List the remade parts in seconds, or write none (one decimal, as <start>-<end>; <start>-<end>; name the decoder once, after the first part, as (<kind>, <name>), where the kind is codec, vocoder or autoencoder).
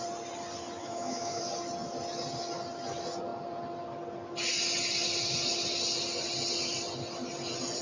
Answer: 0.8-1.4 (autoencoder, DAC-VAE)